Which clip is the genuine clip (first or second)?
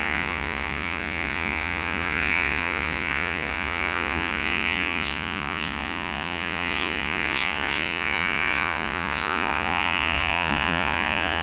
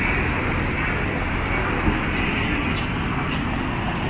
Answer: second